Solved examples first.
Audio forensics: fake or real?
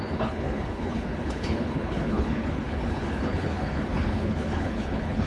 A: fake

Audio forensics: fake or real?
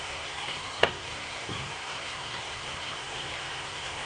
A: fake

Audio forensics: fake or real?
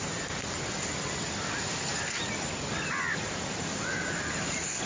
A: real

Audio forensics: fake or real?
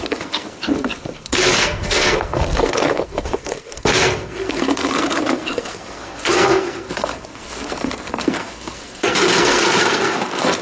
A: fake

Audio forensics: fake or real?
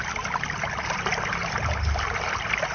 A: real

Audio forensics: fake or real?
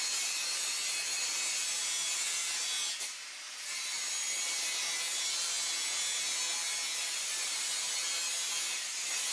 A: real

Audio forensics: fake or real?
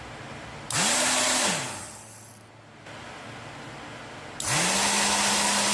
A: real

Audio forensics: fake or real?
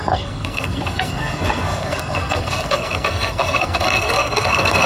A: fake